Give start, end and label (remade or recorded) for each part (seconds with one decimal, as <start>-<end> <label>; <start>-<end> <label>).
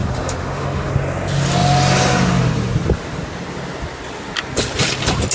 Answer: 0.0-0.9 remade; 0.9-5.3 recorded